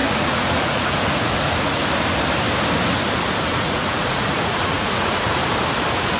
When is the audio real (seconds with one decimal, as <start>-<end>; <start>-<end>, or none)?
1.8-3.5; 5.4-6.2